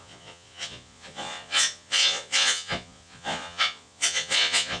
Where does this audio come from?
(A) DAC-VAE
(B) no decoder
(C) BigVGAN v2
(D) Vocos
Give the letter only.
D